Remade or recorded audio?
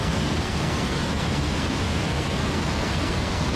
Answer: remade